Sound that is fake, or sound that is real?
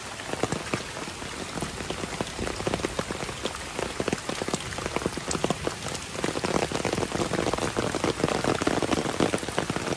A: real